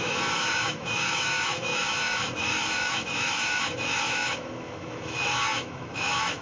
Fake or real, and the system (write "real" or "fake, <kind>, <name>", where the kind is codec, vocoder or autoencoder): fake, autoencoder, DAC-VAE